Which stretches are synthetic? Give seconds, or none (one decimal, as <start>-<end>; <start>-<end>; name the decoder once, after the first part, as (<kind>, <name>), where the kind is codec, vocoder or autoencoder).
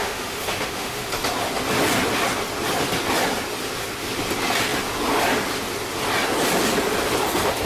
0.0-1.1 (autoencoder, DAC-VAE)